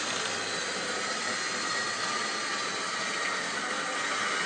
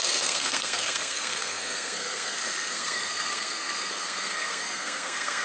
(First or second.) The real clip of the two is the first